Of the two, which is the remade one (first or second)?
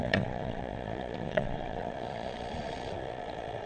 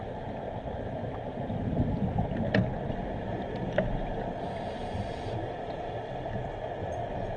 first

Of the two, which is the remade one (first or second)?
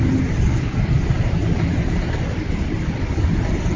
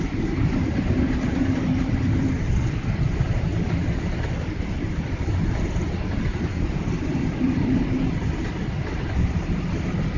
second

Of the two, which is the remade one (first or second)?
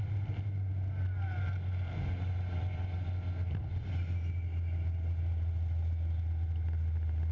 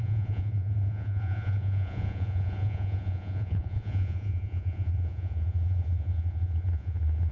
second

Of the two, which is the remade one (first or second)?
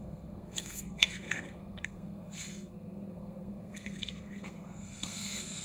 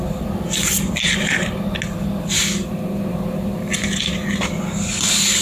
first